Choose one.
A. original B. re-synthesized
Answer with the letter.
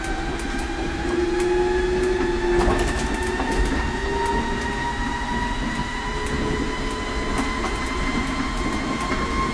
A